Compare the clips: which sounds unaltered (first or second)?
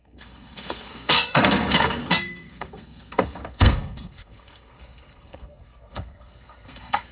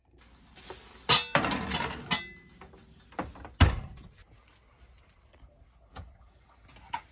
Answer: second